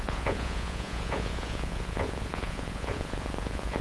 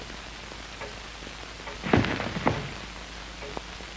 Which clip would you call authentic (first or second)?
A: second